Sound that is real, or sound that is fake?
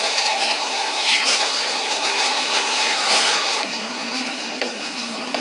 fake